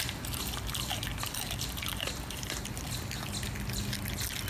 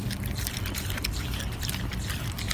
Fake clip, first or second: second